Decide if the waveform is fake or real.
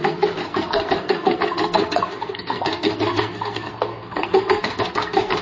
fake